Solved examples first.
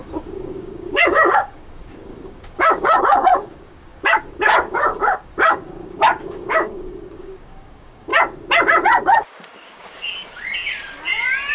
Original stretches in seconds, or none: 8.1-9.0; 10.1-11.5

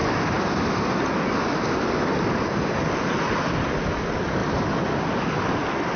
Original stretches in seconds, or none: 0.0-6.0

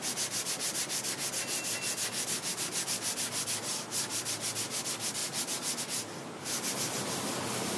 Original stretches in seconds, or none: 0.0-7.8